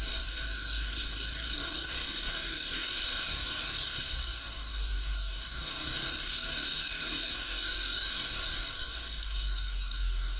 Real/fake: fake